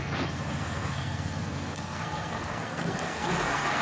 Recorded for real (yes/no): no